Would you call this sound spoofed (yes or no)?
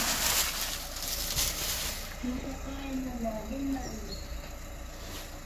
no